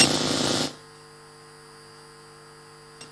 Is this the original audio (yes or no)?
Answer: yes